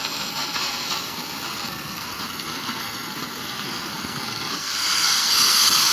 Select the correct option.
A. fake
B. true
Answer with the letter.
A